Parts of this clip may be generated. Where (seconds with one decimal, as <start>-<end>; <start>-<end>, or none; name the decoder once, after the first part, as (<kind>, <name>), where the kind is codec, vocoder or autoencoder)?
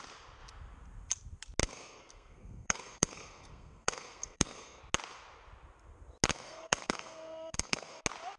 1.6-4.8 (codec, SNAC); 6.3-8.0